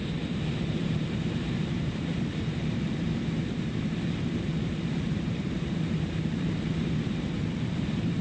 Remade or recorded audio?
remade